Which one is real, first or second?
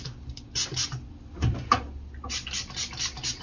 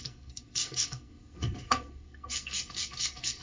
first